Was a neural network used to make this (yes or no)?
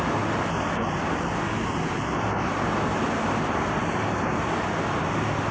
no